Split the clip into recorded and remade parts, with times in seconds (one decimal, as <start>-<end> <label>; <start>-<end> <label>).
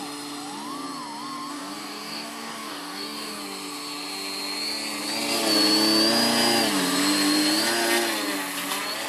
0.0-1.5 recorded; 1.5-3.4 remade; 3.4-9.1 recorded